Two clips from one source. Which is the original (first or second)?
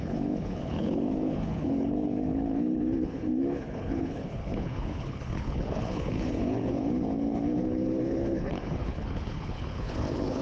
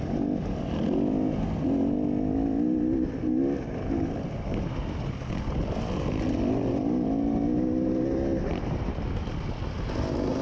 second